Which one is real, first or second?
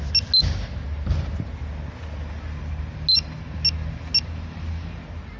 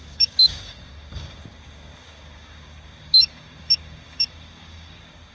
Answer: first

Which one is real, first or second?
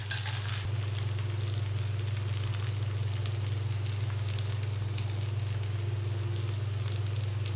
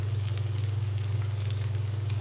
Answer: first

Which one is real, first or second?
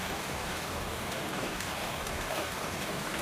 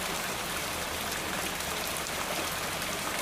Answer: second